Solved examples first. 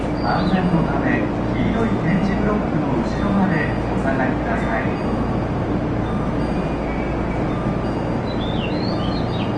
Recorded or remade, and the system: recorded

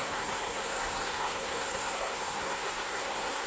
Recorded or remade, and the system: remade, codec, SNAC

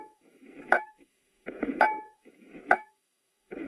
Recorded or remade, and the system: remade, autoencoder, DAC-VAE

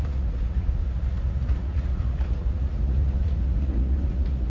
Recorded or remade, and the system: remade, vocoder, Vocos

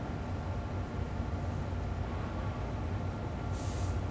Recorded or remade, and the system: recorded